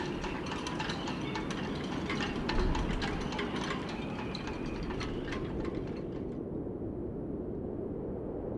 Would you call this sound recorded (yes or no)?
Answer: yes